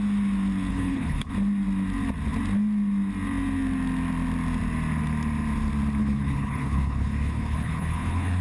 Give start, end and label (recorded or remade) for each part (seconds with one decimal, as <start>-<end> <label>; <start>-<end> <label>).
0.0-0.7 recorded; 0.7-1.3 remade; 1.3-6.0 recorded; 6.0-8.4 remade

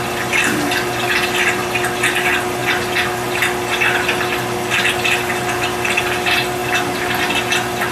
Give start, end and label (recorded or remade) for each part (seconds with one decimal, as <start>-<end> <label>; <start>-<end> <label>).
0.0-7.9 recorded

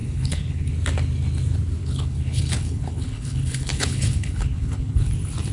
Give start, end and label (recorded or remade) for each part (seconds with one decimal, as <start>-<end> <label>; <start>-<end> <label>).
0.0-0.7 remade; 0.7-1.8 recorded; 1.8-5.1 remade; 5.1-5.5 recorded

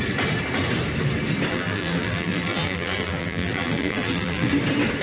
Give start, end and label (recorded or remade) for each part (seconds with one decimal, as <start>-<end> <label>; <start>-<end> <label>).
0.0-1.5 recorded; 1.5-4.5 remade; 4.5-5.0 recorded

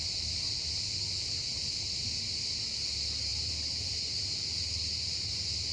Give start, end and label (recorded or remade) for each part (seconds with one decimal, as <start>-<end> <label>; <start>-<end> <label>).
0.0-5.7 recorded

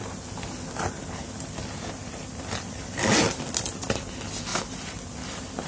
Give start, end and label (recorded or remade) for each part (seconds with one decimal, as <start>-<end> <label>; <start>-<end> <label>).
0.0-5.7 recorded

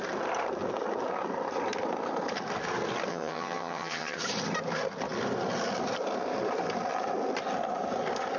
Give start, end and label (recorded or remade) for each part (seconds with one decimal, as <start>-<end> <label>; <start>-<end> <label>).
0.0-3.1 recorded; 3.1-4.2 remade; 4.2-8.4 recorded

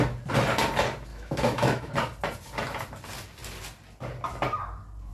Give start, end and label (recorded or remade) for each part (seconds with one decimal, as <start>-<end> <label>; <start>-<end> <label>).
0.0-1.1 recorded; 1.1-1.9 remade; 1.9-5.1 recorded